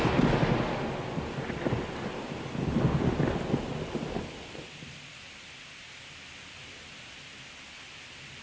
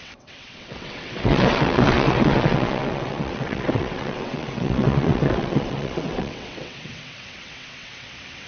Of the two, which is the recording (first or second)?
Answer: first